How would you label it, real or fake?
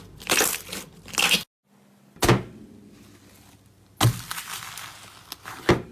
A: real